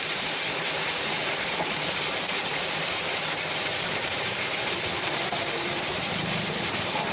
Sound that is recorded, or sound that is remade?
remade